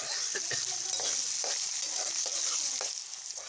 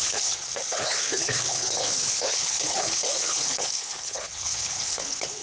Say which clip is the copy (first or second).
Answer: second